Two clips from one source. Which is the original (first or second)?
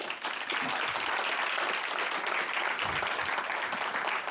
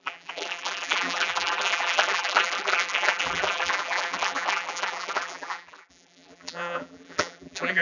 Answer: first